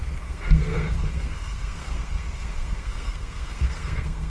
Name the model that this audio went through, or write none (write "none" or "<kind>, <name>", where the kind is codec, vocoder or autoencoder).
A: codec, SNAC